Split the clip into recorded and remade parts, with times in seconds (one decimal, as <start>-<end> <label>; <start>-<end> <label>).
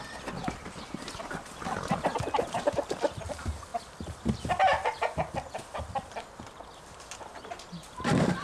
0.0-8.4 recorded